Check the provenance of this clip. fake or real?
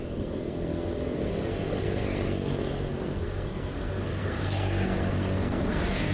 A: fake